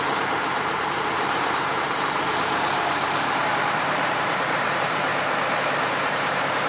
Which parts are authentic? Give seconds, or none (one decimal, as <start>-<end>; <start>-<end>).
5.1-6.1